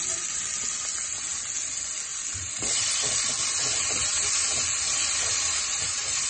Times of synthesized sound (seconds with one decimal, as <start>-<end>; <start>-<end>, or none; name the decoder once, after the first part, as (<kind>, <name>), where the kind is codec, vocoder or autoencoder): 2.1-3.3 (vocoder, BigVGAN v2)